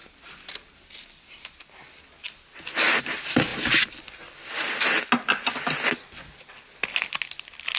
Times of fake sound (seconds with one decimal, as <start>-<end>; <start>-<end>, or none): none